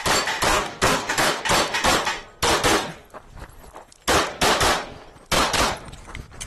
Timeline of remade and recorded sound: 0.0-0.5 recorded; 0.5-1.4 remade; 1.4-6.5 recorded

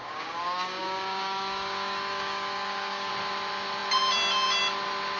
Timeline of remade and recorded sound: 0.0-3.1 remade; 3.1-5.2 recorded

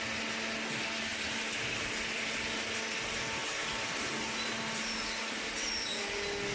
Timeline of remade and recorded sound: 0.0-6.5 recorded

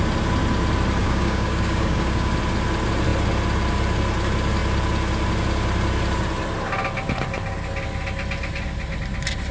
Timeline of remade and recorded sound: 0.0-1.0 recorded; 1.0-2.3 remade; 2.3-9.5 recorded

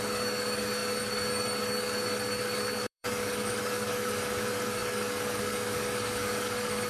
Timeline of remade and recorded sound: 0.0-6.9 remade

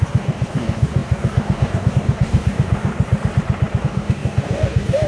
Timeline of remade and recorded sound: 0.0-2.9 remade; 2.9-3.8 recorded; 3.8-5.1 remade